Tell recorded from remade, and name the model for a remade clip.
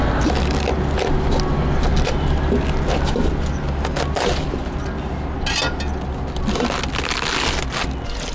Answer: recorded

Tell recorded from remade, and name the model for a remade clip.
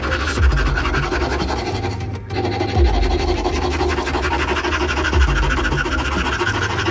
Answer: recorded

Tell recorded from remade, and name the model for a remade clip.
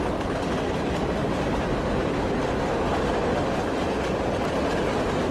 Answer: recorded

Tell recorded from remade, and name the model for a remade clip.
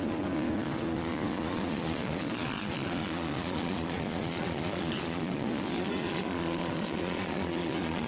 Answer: remade, vocoder, Vocos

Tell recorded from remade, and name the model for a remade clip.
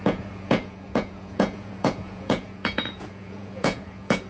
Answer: remade, vocoder, Vocos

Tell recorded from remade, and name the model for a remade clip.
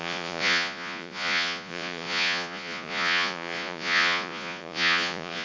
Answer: remade, vocoder, Vocos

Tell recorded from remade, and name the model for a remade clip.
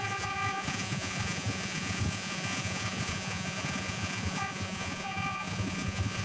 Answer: remade, vocoder, Vocos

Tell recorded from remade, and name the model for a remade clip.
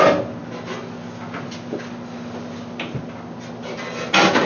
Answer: recorded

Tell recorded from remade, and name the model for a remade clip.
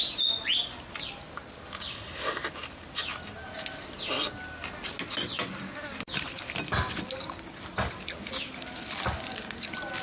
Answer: recorded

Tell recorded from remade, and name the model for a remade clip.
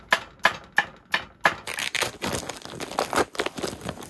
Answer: recorded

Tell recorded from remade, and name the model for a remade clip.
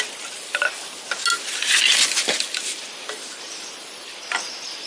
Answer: recorded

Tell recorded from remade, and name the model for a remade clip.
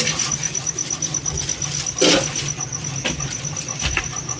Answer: recorded